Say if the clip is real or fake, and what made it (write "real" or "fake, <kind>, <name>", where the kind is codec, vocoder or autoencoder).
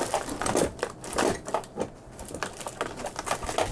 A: real